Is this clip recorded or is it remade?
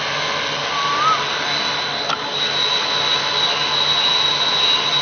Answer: recorded